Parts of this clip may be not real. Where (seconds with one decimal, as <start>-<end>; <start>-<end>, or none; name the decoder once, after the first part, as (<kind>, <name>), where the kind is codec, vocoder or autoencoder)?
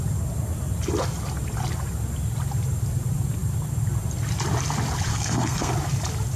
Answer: 5.1-5.7 (codec, SNAC)